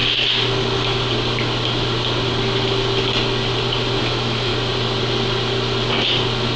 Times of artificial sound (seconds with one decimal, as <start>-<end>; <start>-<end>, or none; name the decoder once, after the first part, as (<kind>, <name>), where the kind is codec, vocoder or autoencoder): 4.0-4.5 (autoencoder, DAC-VAE)